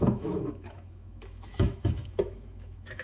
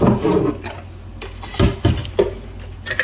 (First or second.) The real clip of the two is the second